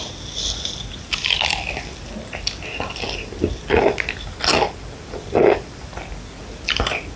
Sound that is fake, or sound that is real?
real